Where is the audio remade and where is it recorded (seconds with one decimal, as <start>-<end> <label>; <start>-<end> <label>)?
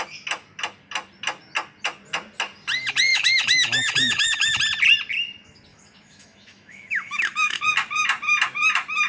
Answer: 0.0-3.1 recorded; 3.1-4.6 remade; 4.6-5.7 recorded; 5.7-7.6 remade; 7.6-9.1 recorded